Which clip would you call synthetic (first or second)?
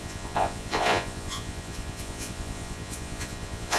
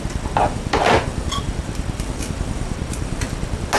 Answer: first